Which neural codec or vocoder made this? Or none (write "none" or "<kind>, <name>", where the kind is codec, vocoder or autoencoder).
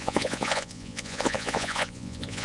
vocoder, Vocos